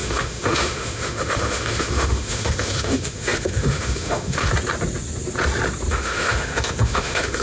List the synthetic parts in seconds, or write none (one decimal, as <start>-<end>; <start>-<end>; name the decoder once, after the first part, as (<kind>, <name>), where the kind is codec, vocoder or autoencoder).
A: 0.0-4.5 (autoencoder, DAC-VAE); 5.9-7.4